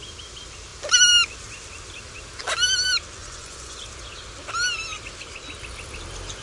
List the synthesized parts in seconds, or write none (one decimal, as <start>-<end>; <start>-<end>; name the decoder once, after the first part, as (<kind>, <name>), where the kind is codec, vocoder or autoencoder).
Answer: 3.2-3.8 (vocoder, Vocos)